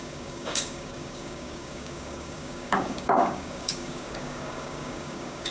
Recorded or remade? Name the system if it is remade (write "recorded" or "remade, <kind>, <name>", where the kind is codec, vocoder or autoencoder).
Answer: remade, codec, DAC